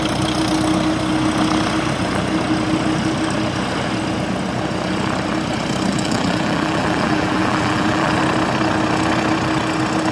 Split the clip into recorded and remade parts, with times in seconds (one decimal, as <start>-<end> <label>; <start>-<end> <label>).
0.0-5.9 recorded; 5.9-8.2 remade; 8.2-10.1 recorded